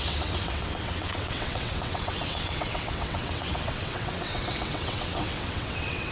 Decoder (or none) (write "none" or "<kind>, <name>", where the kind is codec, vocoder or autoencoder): vocoder, WaveNeXt